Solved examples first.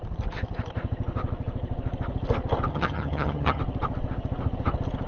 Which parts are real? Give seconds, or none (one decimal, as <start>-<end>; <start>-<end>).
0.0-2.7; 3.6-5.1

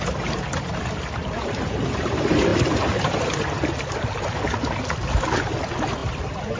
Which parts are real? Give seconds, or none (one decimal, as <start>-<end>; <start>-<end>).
0.0-6.6

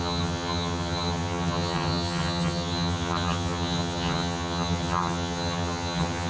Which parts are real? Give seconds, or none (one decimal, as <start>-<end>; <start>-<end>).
none

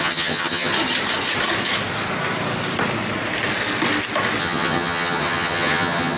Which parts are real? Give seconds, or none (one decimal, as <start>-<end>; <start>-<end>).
0.7-4.4